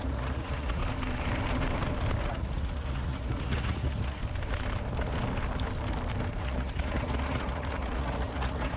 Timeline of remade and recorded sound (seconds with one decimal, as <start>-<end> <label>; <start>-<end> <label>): 0.0-0.8 remade; 0.8-2.2 recorded; 2.2-4.2 remade; 4.2-6.4 recorded; 6.4-8.8 remade